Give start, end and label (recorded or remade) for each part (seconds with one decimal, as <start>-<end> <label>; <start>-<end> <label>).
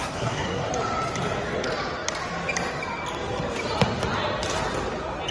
0.0-0.7 remade; 0.7-5.3 recorded